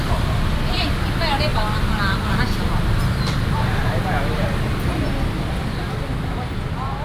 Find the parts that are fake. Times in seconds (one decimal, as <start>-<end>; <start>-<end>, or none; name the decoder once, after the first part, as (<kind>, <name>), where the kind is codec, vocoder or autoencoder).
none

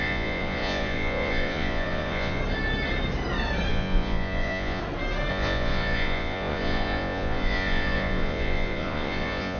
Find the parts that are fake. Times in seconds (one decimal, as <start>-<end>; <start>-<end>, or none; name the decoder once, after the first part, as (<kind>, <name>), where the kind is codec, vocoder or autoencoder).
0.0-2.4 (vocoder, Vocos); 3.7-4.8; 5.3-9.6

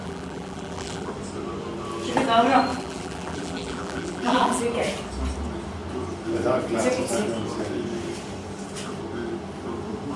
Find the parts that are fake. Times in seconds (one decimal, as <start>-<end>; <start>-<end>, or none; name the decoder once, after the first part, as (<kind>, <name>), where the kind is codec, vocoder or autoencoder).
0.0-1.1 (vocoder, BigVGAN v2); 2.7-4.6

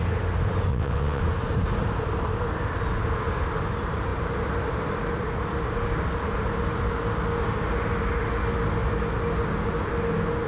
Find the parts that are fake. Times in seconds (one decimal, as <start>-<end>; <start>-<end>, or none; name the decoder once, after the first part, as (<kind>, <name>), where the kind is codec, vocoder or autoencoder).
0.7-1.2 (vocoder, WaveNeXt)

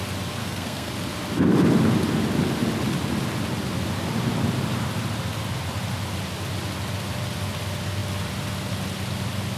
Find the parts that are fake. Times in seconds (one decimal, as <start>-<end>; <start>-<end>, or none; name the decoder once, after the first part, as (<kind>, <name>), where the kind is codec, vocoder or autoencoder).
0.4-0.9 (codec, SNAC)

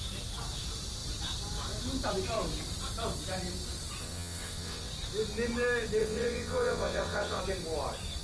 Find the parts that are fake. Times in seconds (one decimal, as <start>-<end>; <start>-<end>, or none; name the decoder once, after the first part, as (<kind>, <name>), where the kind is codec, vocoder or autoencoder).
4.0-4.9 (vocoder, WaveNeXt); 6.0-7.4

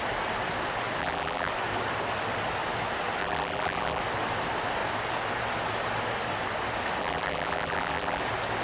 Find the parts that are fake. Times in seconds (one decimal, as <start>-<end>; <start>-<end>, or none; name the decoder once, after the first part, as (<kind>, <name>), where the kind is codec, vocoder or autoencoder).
1.0-1.5 (vocoder, BigVGAN v2); 3.2-4.0; 7.0-8.2

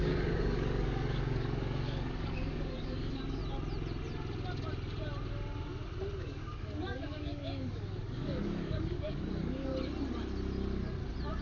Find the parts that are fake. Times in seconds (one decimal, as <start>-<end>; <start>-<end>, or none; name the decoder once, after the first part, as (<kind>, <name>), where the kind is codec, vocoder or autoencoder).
0.0-3.4 (codec, DAC); 6.2-9.7